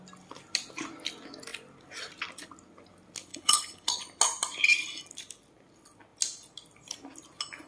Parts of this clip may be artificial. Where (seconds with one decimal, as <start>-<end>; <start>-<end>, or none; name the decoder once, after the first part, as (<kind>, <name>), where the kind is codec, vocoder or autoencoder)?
3.3-4.0 (codec, HILCodec)